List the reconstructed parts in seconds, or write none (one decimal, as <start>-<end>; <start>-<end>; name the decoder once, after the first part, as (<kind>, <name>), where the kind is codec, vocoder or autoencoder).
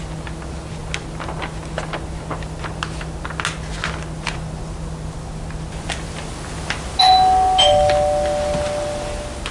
none